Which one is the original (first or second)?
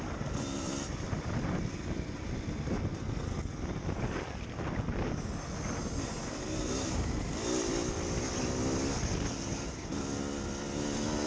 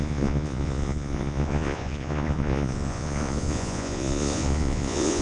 first